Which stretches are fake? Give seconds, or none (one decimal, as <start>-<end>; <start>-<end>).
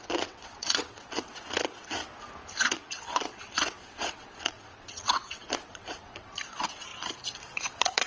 0.0-2.0; 2.6-6.9; 7.6-8.1